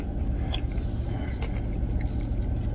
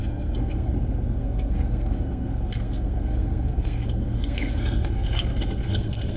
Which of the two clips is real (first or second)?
first